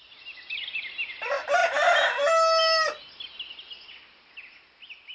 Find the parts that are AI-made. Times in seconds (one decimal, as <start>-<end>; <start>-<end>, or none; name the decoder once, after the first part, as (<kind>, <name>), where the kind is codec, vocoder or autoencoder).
none